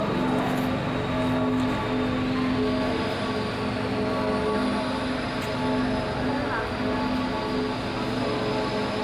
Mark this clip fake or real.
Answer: real